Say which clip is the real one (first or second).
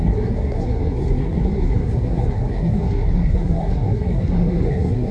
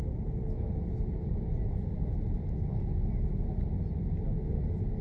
second